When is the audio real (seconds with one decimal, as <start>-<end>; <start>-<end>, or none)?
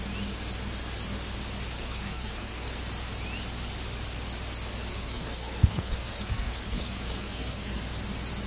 0.0-1.8; 2.8-4.9; 7.8-8.5